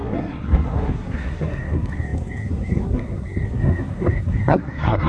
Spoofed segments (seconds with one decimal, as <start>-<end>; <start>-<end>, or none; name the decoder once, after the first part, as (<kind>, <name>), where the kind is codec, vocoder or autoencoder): 0.0-5.1 (codec, SNAC)